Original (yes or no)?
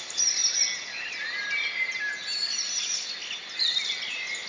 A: yes